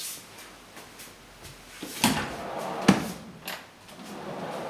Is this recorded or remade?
recorded